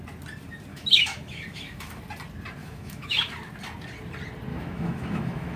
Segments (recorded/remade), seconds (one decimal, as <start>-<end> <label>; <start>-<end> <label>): 0.0-0.7 recorded; 0.7-2.0 remade; 2.0-2.6 recorded; 2.6-3.3 remade; 3.3-4.5 recorded; 4.5-5.6 remade